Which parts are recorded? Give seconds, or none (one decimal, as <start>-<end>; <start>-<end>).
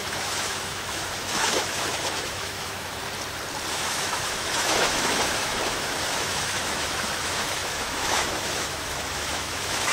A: 3.0-3.7